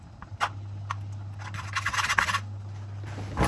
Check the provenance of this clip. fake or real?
real